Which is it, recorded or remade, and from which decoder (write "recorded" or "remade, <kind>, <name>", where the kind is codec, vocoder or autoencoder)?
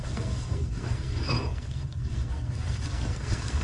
remade, codec, SNAC